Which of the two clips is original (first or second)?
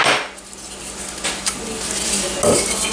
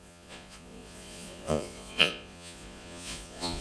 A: first